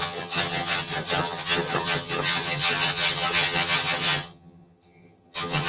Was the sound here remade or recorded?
remade